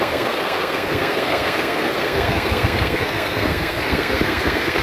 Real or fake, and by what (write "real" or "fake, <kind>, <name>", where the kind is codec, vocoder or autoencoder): fake, codec, SNAC